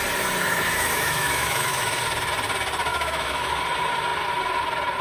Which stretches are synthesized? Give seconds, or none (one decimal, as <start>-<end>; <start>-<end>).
0.5-2.0; 2.9-3.5